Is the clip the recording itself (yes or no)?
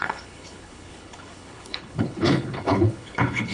no